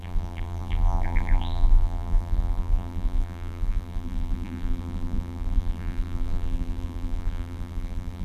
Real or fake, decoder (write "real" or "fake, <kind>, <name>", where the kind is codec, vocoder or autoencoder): fake, vocoder, BigVGAN v2